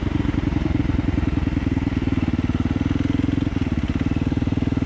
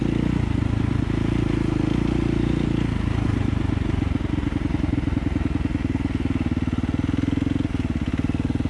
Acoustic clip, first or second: second